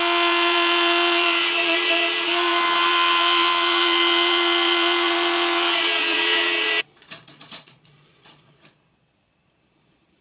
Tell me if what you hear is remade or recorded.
remade